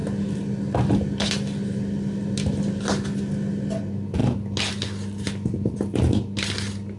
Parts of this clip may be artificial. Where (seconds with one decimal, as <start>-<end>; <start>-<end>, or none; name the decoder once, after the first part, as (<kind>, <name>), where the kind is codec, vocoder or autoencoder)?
none